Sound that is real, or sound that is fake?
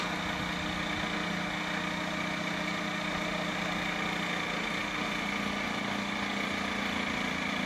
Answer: real